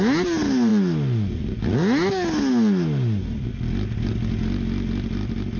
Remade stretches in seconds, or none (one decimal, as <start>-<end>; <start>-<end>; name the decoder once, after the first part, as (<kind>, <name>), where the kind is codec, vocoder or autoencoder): none